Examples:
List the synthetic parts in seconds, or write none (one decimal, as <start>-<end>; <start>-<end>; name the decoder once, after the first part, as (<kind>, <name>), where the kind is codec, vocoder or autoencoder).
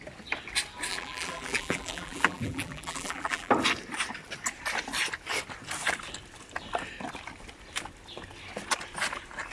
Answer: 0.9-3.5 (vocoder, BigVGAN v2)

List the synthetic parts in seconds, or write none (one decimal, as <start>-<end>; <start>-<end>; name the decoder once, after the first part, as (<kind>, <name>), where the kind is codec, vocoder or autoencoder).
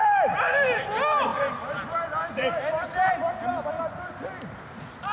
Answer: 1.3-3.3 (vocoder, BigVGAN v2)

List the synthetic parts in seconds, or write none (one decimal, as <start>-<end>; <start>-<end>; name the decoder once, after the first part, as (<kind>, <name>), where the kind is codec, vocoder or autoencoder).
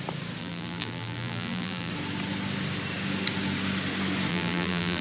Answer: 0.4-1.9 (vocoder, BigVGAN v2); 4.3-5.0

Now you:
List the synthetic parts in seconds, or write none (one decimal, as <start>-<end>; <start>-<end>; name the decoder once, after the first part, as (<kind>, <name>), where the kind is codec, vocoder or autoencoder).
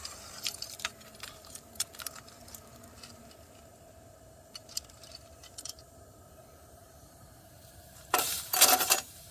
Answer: 0.0-2.4 (vocoder, BigVGAN v2); 3.1-9.3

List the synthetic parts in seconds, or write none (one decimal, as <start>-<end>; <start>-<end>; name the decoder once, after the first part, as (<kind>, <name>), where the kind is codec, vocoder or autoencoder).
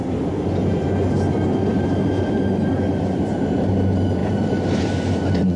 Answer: 1.7-3.7 (vocoder, BigVGAN v2); 4.2-4.9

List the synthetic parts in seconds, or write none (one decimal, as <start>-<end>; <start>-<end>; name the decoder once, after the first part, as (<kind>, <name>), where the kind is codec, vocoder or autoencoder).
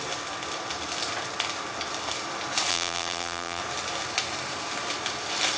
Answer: 2.7-3.6 (vocoder, BigVGAN v2)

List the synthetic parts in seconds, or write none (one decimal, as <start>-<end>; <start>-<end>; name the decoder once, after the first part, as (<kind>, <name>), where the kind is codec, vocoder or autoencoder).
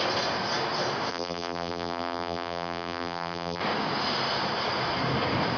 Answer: 1.1-3.6 (vocoder, BigVGAN v2)